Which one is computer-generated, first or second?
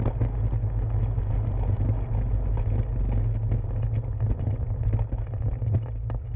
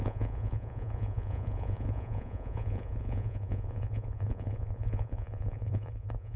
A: second